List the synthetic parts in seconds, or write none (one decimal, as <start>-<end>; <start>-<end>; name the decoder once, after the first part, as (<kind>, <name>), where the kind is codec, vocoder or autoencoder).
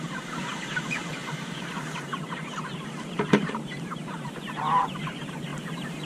0.0-1.2 (vocoder, BigVGAN v2); 2.2-5.5